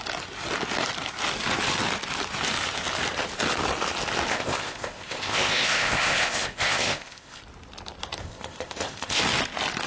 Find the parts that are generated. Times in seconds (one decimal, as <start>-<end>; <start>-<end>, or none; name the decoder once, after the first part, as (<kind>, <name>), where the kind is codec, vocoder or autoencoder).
4.3-7.4 (codec, ZipCodec); 8.2-9.2